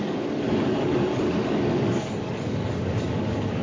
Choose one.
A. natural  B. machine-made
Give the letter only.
B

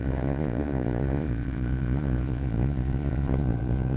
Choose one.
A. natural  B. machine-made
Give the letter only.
B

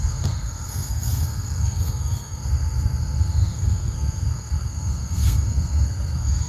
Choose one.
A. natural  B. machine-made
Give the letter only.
B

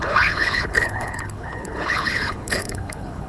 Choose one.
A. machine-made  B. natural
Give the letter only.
A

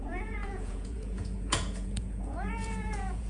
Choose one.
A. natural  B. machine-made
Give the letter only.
B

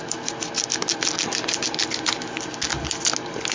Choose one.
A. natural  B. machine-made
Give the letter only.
A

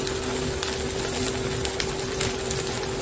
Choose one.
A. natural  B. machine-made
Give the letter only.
A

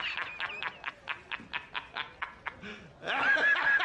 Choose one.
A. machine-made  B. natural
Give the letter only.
B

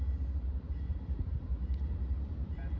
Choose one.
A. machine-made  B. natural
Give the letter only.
A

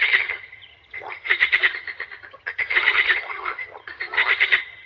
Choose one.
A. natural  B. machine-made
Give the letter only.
B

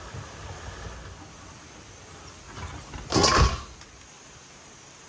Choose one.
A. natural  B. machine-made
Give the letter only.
A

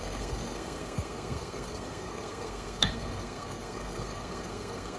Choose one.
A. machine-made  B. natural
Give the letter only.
A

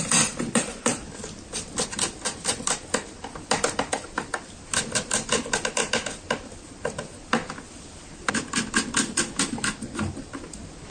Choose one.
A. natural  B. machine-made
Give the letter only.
A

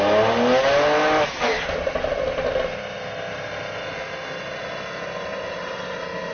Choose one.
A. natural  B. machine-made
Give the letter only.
A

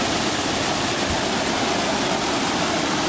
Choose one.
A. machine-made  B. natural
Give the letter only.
B